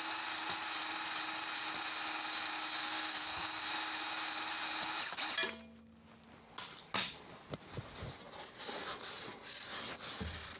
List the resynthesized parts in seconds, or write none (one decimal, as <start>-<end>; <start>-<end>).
2.8-3.7